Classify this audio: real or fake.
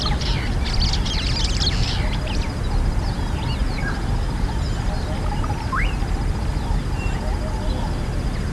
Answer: real